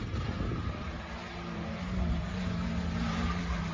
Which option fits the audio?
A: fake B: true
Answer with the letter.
B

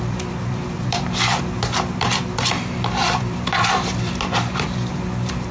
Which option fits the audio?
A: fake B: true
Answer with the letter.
A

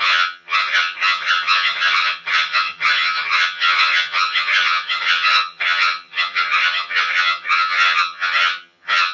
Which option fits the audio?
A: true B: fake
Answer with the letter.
B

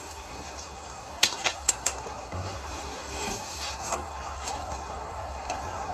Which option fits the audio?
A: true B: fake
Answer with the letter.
B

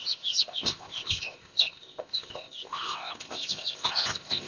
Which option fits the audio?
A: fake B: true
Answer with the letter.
A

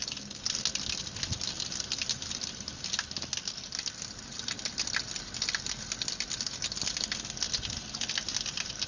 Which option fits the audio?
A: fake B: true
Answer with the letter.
B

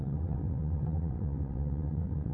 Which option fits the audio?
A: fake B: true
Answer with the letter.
A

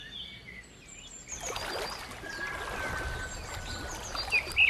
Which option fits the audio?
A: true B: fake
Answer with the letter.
A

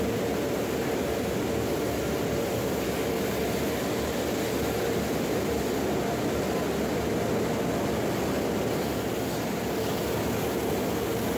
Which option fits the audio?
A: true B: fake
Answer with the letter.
A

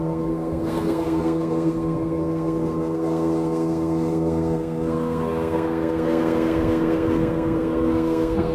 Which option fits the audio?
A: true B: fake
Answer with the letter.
B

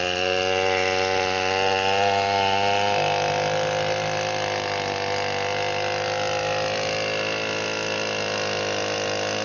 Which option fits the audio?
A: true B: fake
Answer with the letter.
A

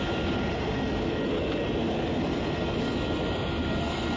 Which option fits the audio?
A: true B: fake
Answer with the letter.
A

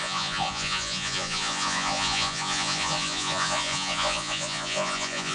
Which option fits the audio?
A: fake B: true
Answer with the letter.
A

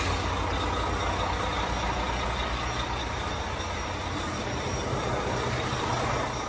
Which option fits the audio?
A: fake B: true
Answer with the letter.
B